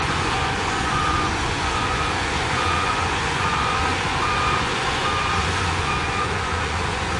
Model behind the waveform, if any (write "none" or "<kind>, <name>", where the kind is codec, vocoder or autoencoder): vocoder, Vocos